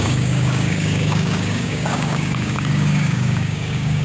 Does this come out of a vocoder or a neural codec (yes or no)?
yes